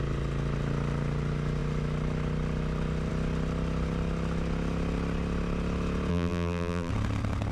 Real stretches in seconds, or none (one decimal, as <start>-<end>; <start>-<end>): 0.0-6.1; 6.9-7.5